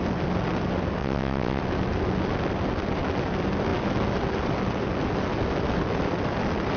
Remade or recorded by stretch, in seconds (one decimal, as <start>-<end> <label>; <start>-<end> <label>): 0.0-1.0 recorded; 1.0-1.6 remade; 1.6-6.8 recorded